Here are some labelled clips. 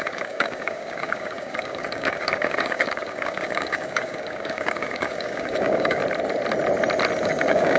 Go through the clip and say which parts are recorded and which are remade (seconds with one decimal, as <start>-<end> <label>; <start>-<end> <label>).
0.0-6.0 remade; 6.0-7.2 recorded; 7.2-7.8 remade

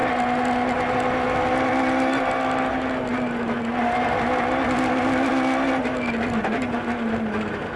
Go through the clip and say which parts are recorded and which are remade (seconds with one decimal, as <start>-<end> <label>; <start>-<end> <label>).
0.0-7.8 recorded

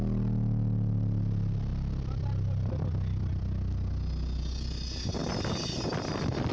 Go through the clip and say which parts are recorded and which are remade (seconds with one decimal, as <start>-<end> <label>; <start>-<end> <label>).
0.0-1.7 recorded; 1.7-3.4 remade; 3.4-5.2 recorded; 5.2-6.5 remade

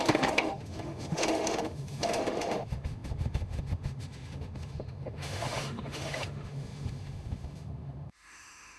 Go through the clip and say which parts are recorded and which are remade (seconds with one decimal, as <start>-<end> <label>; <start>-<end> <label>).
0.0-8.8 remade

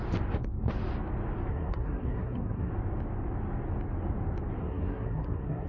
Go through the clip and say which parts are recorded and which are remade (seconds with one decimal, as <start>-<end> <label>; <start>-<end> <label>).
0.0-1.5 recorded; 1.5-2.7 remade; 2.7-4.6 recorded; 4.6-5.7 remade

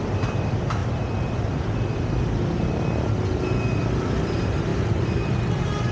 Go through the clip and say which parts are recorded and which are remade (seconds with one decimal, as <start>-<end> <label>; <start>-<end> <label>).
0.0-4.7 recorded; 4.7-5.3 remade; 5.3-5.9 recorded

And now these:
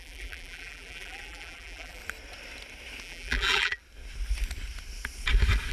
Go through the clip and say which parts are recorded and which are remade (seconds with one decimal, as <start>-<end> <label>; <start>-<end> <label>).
0.0-2.0 remade; 2.0-3.0 recorded; 3.0-3.8 remade; 3.8-5.7 recorded